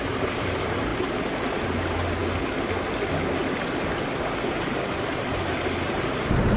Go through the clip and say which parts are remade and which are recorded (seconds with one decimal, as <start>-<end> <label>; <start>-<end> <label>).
0.0-0.9 remade; 0.9-1.6 recorded; 1.6-2.2 remade; 2.2-5.9 recorded; 5.9-6.6 remade